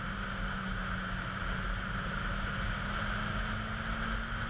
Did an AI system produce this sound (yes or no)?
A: no